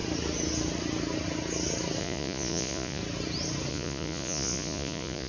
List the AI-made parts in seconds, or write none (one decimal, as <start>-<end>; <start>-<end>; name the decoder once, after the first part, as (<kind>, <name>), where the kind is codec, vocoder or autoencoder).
2.0-3.0 (vocoder, Vocos); 3.7-5.3